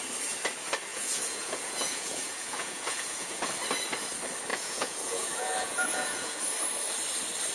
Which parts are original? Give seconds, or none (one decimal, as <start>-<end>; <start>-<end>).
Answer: 0.0-0.9; 3.4-4.5; 6.4-7.5